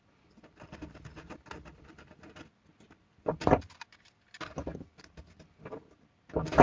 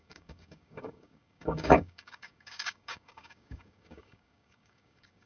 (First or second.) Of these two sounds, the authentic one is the first